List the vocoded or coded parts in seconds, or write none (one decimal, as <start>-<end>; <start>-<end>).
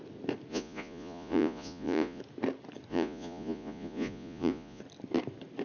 0.5-2.2; 2.9-4.8